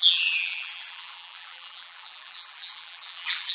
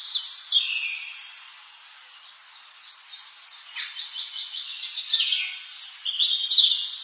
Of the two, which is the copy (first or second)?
first